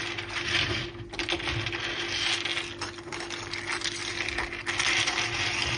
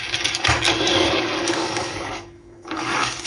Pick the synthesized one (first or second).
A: second